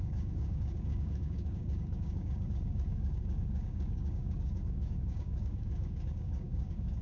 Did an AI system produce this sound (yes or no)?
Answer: yes